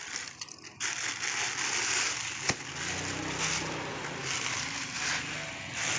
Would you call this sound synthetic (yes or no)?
no